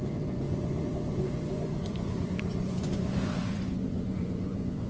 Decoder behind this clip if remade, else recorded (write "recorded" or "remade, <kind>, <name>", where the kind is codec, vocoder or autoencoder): remade, vocoder, Vocos